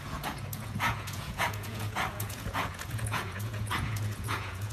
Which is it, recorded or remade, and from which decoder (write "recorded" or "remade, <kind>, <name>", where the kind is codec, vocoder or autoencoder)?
remade, vocoder, Vocos